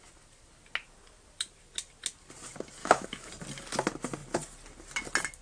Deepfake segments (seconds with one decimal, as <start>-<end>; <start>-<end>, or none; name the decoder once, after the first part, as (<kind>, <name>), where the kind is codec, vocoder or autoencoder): 2.8-3.3 (autoencoder, DAC-VAE)

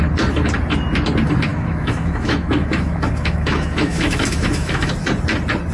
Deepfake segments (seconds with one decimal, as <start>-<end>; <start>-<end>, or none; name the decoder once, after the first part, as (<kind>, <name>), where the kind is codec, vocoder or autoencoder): 1.5-4.9 (autoencoder, DAC-VAE)